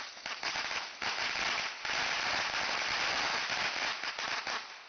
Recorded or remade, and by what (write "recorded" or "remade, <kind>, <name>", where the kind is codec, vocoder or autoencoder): recorded